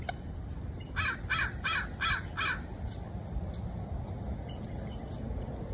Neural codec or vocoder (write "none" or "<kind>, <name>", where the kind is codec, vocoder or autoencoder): none